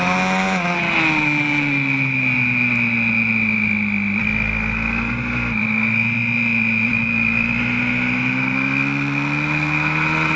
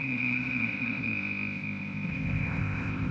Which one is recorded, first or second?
first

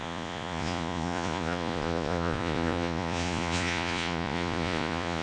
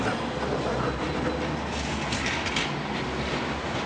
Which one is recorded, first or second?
second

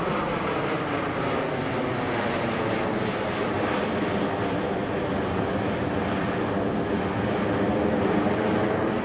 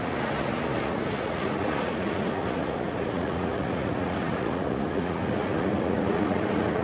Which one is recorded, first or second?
first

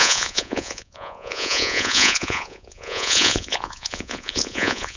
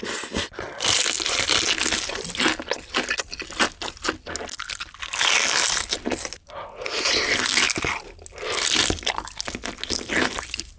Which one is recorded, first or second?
second